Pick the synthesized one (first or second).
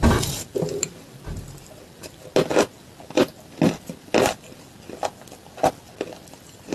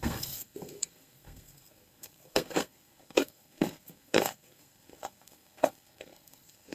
second